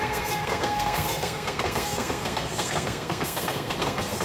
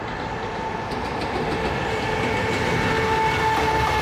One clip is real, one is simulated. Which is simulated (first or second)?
first